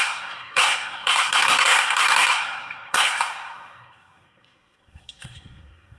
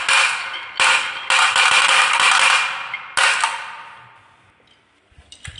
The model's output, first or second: first